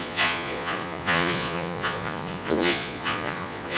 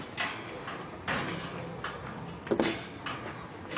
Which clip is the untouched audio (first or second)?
second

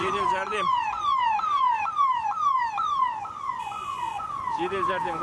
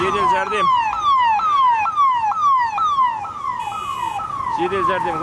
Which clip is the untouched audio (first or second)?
second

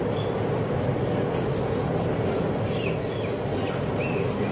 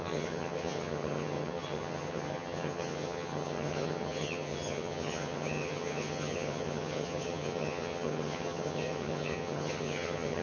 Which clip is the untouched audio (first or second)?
first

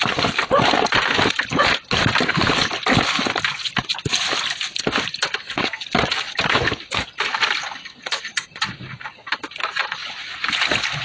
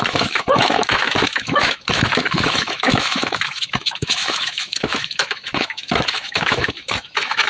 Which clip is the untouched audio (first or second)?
first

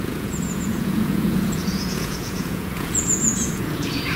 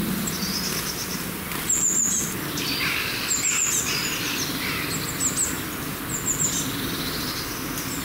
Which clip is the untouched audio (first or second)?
second